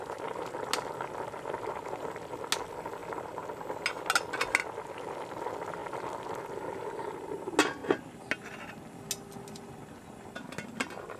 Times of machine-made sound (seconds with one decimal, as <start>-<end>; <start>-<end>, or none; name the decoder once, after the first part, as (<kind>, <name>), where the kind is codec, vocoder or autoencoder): none